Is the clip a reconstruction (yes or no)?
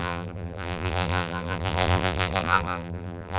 yes